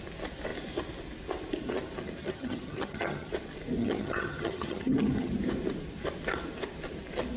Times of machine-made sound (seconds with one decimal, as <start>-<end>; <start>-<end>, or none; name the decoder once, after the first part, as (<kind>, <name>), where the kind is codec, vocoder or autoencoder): 2.2-3.3 (vocoder, HiFi-GAN); 3.8-5.3